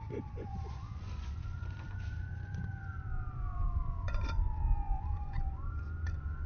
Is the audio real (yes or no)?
no